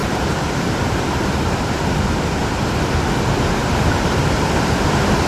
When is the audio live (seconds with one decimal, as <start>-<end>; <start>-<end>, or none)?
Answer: 2.9-3.6; 4.5-5.3